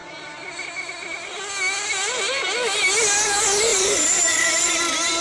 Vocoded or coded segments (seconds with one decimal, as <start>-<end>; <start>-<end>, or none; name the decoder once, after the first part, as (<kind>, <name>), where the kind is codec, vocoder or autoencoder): 3.7-4.8 (vocoder, BigVGAN v2)